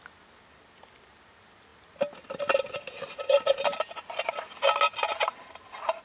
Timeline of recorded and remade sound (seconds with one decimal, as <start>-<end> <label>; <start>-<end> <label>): 0.0-6.0 recorded